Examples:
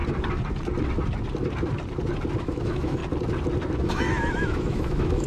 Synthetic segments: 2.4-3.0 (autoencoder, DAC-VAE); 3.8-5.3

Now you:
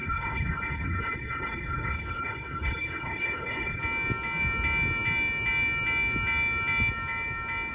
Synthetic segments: 0.0-3.8 (codec, HILCodec)

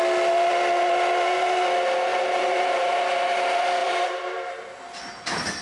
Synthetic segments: 2.1-2.9 (vocoder, BigVGAN v2); 3.8-4.8

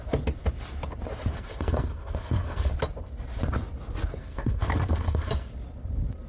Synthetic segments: 1.3-2.7 (codec, SNAC); 4.2-5.5

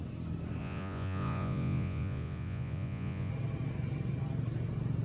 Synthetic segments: 0.6-3.3 (vocoder, Vocos)

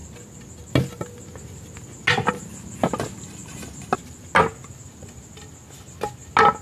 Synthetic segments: none

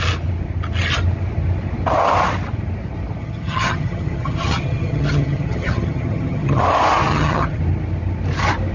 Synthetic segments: 3.2-6.6 (vocoder, HiFi-GAN); 7.1-7.6

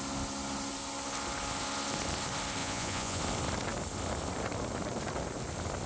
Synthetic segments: 2.6-3.2 (vocoder, Vocos)